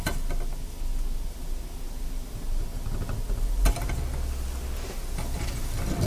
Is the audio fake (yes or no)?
no